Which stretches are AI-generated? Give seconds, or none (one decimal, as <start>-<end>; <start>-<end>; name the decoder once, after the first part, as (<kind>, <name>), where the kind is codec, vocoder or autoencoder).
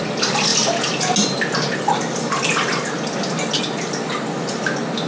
none